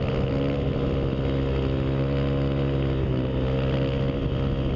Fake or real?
real